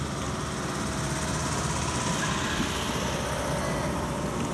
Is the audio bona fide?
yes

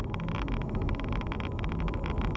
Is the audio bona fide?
no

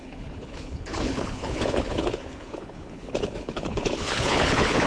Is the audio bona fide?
no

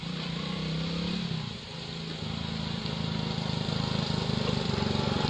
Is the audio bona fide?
yes